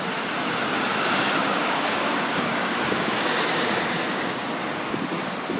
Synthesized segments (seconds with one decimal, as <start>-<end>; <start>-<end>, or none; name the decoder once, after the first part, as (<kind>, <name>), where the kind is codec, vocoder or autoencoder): 0.9-4.3 (codec, DAC)